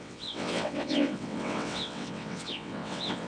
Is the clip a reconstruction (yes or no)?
yes